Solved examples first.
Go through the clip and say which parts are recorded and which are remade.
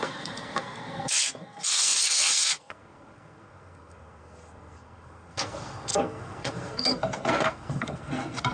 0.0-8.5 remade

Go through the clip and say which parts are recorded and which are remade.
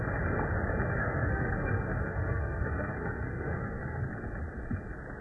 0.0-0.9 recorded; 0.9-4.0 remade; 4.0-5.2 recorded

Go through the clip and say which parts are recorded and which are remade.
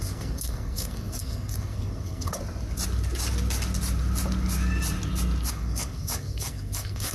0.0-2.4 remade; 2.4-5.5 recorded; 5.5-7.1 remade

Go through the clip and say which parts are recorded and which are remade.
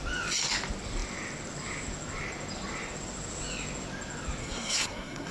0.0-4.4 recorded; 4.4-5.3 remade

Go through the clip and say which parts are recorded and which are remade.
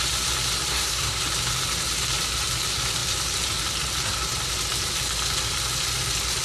0.0-0.7 recorded; 0.7-1.2 remade; 1.2-6.4 recorded